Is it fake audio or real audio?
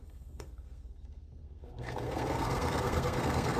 fake